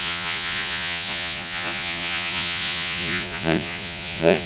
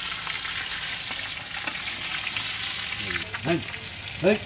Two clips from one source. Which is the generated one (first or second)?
first